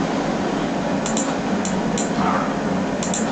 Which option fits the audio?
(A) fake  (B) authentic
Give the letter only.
B